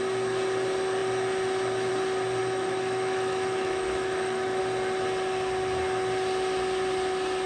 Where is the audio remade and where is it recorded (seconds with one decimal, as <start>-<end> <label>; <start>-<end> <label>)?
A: 0.0-2.4 recorded; 2.4-4.6 remade; 4.6-7.5 recorded